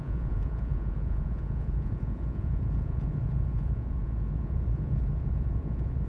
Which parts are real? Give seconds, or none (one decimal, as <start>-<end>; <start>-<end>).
none